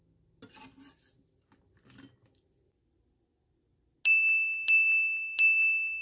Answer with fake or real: real